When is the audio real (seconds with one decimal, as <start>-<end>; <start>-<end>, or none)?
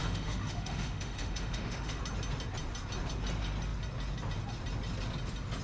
2.0-5.6